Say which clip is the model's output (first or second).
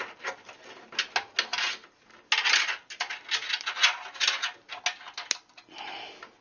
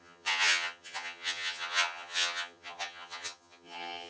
second